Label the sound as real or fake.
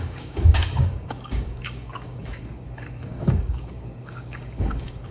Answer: fake